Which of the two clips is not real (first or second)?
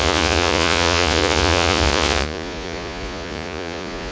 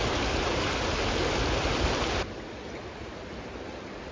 first